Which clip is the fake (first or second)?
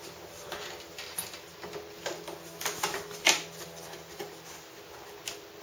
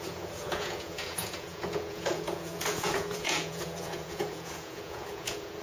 second